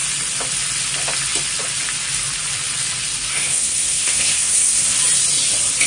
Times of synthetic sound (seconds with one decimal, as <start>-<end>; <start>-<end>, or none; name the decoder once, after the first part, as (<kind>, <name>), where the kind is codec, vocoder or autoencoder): 3.3-5.0 (codec, SNAC)